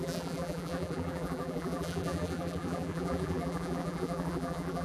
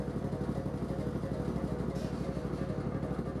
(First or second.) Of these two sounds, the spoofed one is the first